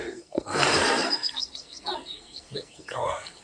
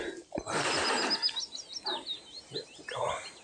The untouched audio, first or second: second